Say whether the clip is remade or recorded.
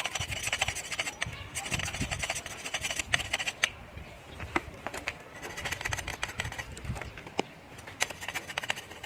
recorded